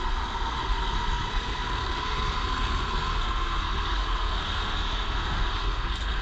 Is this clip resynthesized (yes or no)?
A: yes